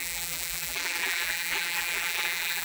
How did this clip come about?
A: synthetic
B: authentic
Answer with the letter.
A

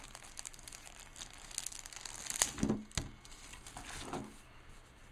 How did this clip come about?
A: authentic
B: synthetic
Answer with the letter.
A